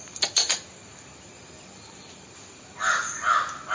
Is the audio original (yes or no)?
yes